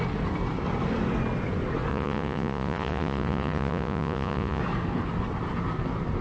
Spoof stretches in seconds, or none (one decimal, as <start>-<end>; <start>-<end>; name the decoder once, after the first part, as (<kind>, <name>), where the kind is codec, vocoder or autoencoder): 1.9-4.6 (vocoder, Vocos)